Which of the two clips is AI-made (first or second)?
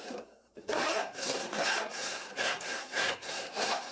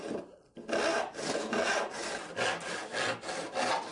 first